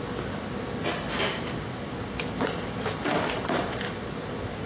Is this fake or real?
real